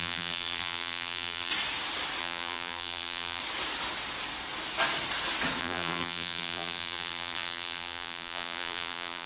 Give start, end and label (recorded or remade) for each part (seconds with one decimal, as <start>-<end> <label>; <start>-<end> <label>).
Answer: 0.0-1.5 remade; 1.5-2.2 recorded; 2.2-3.4 remade; 3.4-5.6 recorded; 5.6-9.3 remade